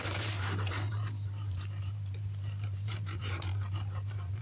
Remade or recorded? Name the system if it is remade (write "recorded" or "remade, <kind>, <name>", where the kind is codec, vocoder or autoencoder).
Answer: remade, vocoder, BigVGAN v2